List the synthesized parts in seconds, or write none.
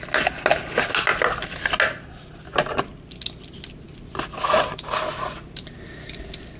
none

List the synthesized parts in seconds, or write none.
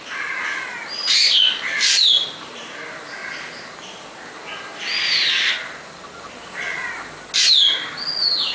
none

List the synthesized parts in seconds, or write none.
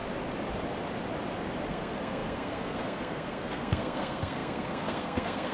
1.7-5.5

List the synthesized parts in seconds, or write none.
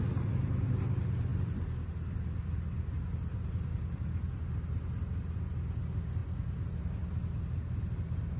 none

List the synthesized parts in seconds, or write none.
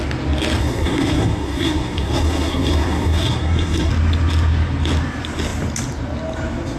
0.6-3.9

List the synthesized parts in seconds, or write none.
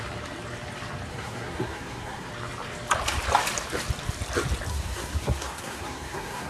1.1-2.3; 4.7-6.5